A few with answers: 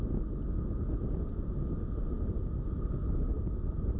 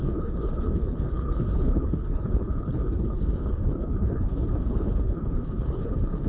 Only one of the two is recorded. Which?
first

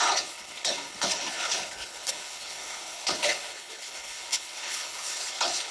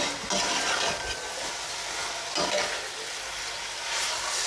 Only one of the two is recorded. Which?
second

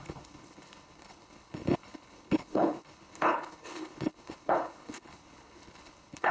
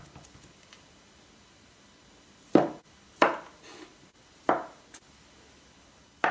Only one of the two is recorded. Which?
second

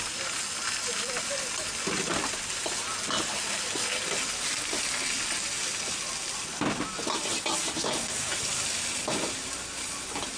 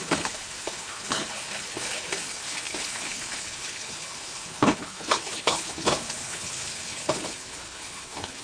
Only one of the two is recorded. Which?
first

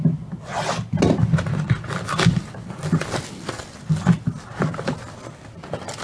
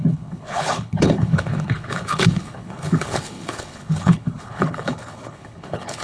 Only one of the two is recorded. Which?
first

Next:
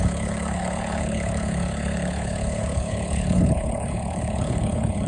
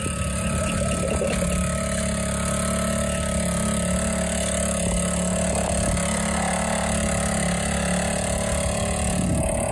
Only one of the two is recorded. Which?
second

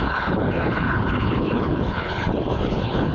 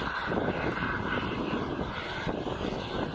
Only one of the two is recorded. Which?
second